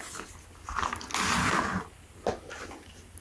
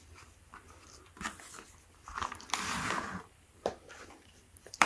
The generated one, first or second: second